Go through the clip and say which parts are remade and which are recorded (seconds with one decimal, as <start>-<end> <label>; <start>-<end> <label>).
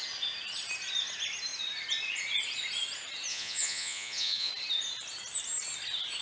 0.0-3.3 recorded; 3.3-4.5 remade; 4.5-6.2 recorded